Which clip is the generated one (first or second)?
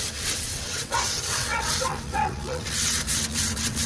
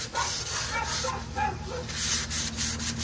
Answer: first